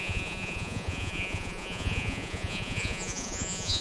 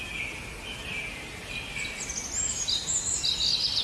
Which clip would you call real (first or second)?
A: second